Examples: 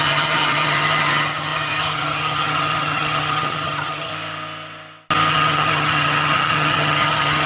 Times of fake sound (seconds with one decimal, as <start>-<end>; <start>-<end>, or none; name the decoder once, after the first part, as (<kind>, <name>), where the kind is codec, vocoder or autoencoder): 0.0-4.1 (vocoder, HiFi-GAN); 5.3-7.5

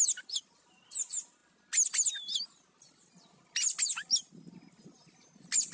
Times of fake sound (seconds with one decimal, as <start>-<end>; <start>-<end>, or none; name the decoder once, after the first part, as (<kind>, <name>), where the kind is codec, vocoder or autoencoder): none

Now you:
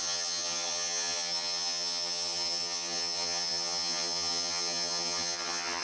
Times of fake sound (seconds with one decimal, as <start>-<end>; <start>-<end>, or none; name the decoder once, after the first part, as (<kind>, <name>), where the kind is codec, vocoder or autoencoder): 0.0-5.8 (vocoder, HiFi-GAN)

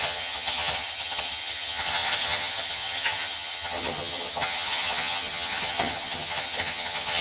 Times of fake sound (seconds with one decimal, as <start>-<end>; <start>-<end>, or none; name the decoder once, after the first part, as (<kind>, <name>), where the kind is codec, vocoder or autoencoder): 0.0-7.2 (vocoder, HiFi-GAN)